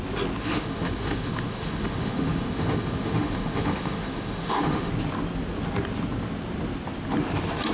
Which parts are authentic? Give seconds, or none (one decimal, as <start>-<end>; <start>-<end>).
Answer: 0.0-0.4; 4.9-7.7